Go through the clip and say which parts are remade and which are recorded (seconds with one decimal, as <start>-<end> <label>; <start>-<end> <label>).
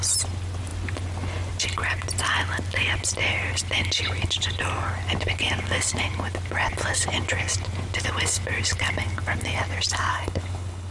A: 0.0-10.1 recorded; 10.1-10.9 remade